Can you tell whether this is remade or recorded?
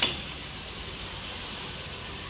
recorded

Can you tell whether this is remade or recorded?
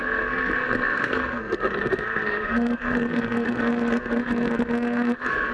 remade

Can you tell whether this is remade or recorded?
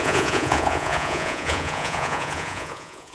remade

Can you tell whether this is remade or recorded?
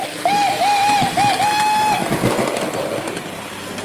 recorded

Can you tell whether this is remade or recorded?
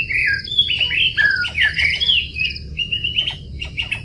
recorded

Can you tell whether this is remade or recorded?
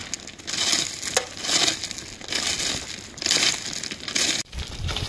recorded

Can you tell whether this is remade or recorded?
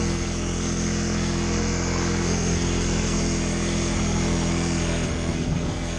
remade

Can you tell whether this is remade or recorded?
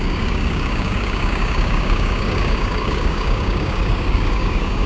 remade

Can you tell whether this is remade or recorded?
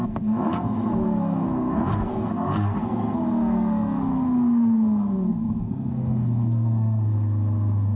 remade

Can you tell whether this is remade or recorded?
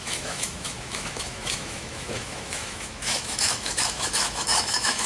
remade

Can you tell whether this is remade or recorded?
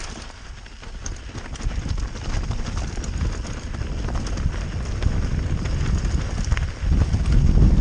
recorded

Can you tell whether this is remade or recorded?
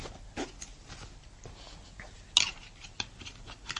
recorded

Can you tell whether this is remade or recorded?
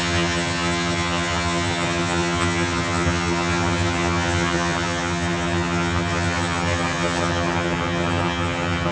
remade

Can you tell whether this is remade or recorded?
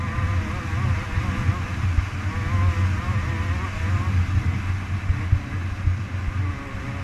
recorded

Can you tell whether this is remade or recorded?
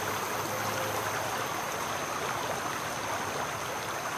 recorded